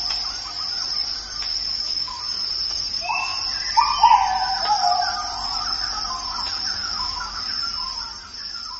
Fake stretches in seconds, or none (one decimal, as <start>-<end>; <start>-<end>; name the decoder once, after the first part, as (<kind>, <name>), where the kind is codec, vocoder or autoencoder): 1.7-2.2 (autoencoder, DAC-VAE); 6.8-7.4